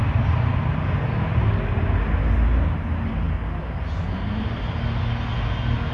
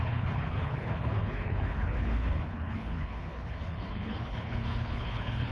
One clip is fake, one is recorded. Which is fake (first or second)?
second